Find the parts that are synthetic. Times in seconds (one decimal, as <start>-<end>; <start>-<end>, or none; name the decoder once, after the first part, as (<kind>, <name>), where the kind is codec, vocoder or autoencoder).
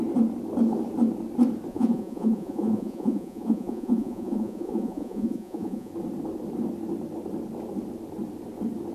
1.7-5.9 (vocoder, Vocos)